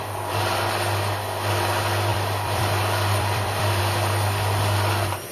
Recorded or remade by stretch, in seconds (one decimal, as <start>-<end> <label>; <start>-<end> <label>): 0.0-2.1 recorded; 2.1-3.8 remade; 3.8-5.3 recorded